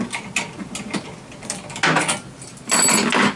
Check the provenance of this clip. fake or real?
real